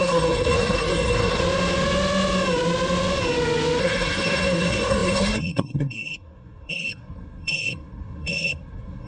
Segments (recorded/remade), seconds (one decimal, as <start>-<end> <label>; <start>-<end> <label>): 0.0-1.4 remade; 1.4-3.8 recorded; 3.8-9.1 remade